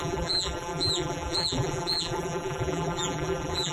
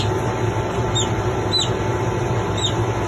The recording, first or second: second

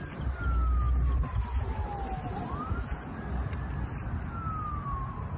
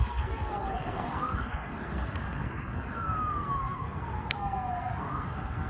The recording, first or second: first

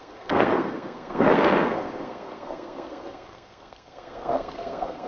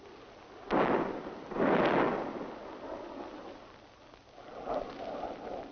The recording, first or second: second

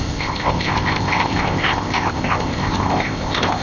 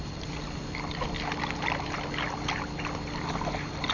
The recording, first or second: second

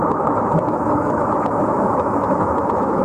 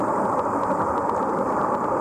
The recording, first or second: second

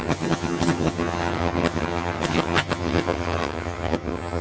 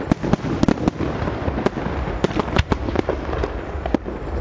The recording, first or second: second